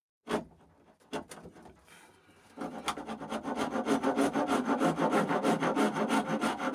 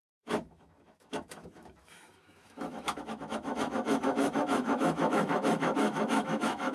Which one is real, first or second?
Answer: first